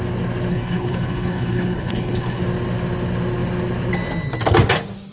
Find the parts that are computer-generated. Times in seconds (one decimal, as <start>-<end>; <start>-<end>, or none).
0.5-2.4